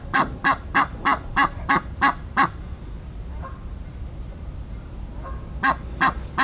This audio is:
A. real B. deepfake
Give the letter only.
A